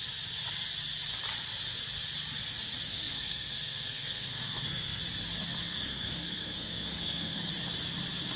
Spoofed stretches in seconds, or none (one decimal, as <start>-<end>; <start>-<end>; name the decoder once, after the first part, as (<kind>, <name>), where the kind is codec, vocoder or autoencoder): 2.9-5.0 (codec, SNAC); 5.6-7.5